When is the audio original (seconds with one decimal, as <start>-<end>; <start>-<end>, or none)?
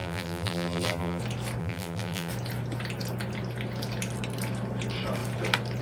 1.2-1.6; 2.3-5.8